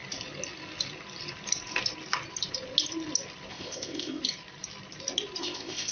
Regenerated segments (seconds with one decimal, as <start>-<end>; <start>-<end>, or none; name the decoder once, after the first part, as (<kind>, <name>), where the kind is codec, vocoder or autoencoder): 3.5-4.2 (codec, ZipCodec); 5.4-5.9